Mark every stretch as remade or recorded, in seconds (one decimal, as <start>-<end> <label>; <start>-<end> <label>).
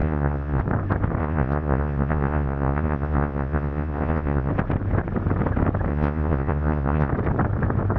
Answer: 0.0-0.6 remade; 0.6-1.2 recorded; 1.2-4.5 remade; 4.5-5.9 recorded; 5.9-7.1 remade; 7.1-8.0 recorded